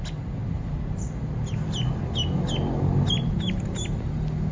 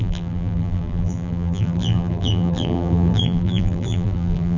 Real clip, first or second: first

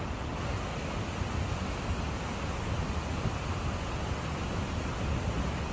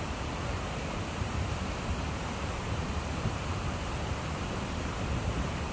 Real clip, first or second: first